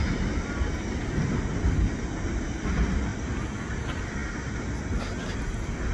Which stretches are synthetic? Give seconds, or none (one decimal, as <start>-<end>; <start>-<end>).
none